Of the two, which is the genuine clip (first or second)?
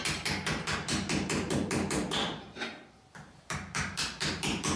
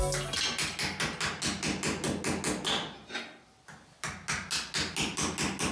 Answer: second